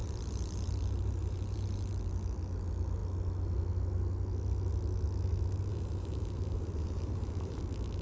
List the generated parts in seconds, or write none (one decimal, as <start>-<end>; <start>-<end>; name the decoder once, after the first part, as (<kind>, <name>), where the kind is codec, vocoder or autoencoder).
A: 0.0-1.9 (vocoder, BigVGAN v2); 5.7-7.6

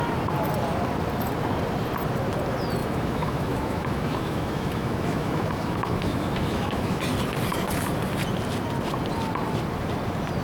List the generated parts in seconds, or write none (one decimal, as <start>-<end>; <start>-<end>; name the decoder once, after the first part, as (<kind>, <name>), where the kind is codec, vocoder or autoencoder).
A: 2.8-7.0 (autoencoder, DAC-VAE)